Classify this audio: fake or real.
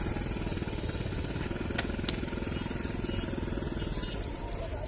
real